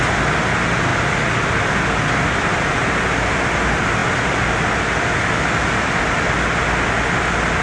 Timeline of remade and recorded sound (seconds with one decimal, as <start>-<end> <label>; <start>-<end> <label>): 0.0-7.6 recorded